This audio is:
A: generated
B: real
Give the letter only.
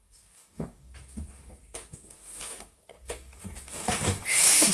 A